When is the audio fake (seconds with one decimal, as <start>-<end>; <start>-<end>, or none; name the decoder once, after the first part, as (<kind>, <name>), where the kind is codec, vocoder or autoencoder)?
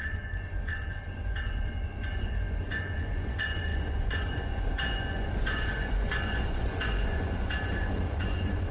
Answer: 0.0-8.7 (vocoder, Vocos)